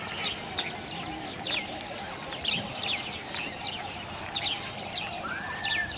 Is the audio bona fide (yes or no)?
yes